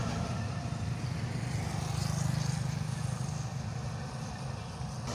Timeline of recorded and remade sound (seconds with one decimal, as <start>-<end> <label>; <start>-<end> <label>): 0.0-5.1 recorded